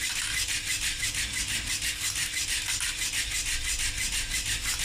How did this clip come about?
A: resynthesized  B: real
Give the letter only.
B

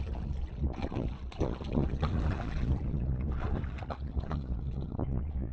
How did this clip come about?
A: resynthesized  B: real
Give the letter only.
A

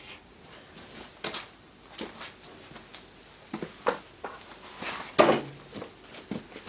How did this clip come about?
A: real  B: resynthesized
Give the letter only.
A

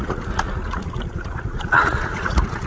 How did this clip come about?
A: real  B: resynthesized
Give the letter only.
B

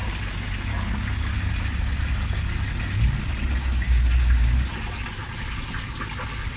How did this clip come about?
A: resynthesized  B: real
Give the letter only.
B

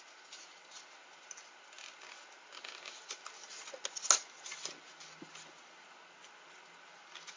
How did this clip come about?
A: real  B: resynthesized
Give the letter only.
A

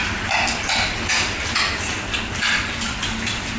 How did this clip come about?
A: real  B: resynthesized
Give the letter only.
A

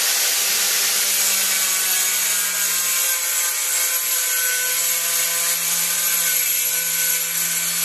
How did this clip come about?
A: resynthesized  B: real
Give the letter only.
B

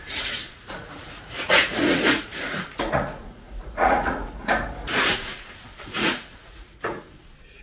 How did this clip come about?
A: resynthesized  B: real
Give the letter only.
A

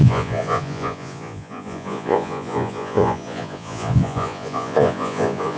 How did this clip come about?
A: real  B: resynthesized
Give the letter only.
B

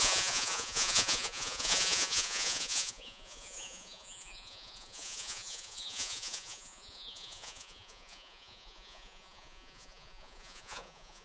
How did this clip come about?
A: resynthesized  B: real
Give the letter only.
A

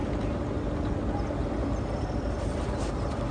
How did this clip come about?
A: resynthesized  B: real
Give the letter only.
B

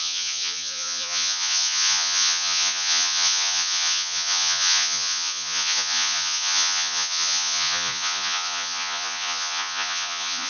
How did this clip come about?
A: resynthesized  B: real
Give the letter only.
A